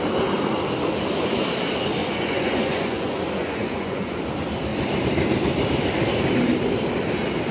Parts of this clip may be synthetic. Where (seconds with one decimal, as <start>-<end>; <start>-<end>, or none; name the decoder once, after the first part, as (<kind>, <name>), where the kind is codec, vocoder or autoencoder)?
2.0-4.2 (vocoder, Vocos)